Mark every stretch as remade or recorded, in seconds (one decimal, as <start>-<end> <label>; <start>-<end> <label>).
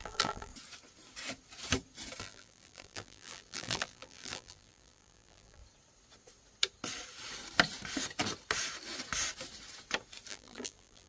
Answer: 0.0-0.5 remade; 0.5-2.2 recorded; 2.2-5.6 remade; 5.6-10.3 recorded; 10.3-11.1 remade